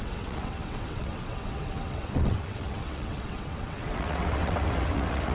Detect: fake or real fake